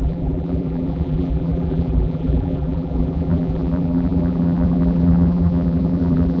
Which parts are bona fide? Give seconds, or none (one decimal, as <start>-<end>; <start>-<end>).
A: none